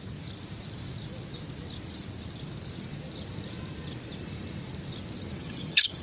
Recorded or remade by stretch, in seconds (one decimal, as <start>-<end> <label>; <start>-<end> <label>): 0.0-5.4 recorded; 5.4-6.0 remade

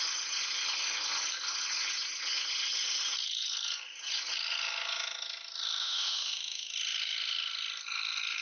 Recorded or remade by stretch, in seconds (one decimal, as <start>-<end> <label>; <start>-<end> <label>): 0.0-5.8 recorded; 5.8-6.7 remade; 6.7-8.4 recorded

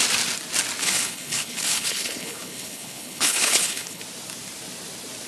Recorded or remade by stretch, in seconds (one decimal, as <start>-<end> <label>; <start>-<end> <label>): 0.0-0.8 recorded; 0.8-4.0 remade; 4.0-5.3 recorded

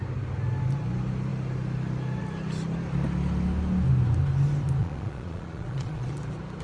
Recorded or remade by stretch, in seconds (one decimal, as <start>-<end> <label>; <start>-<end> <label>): 0.0-4.8 recorded; 4.8-6.1 remade; 6.1-6.6 recorded

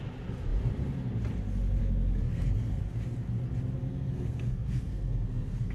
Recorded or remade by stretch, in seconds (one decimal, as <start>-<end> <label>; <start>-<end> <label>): 0.0-1.8 recorded; 1.8-2.8 remade; 2.8-3.8 recorded; 3.8-5.7 remade

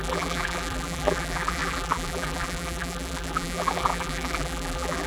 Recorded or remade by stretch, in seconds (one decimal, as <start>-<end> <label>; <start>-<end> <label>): 0.0-5.1 remade

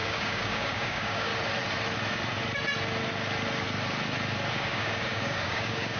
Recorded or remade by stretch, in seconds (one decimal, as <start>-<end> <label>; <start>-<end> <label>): 0.0-1.3 remade; 1.3-4.5 recorded; 4.5-6.0 remade